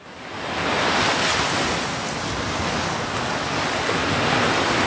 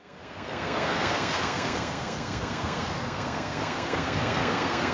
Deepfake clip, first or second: second